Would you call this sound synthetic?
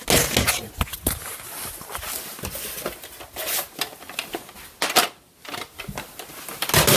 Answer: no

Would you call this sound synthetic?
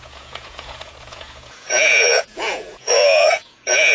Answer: yes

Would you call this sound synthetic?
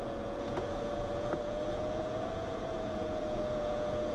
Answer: yes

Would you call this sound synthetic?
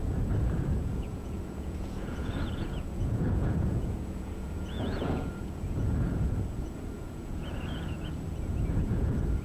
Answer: yes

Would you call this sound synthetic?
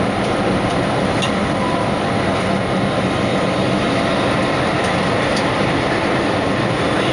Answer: no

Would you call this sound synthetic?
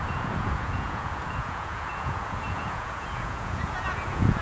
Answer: yes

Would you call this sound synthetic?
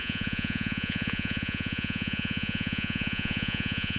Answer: yes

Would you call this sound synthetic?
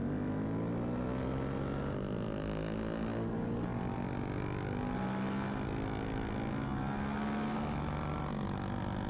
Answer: no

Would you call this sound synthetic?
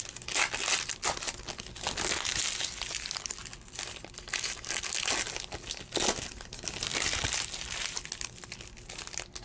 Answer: no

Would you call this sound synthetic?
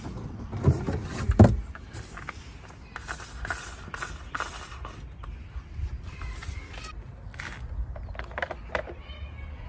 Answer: no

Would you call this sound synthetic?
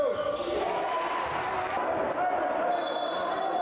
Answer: no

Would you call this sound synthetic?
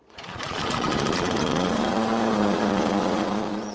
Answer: yes